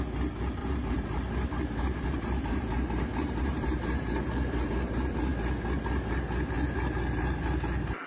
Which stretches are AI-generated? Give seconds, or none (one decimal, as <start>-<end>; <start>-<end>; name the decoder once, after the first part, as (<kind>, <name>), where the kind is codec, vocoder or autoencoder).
0.6-4.7 (vocoder, BigVGAN v2)